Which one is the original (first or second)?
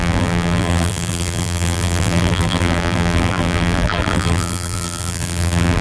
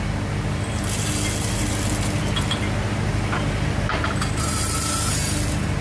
second